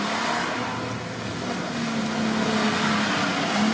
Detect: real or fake real